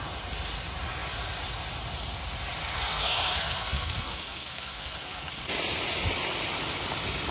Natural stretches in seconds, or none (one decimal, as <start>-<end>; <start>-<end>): 0.0-2.6; 5.3-7.3